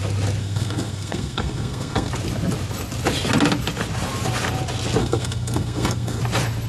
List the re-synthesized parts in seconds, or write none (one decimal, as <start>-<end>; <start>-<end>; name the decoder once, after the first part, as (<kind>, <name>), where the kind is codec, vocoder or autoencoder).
0.4-2.1 (codec, SNAC); 5.0-6.2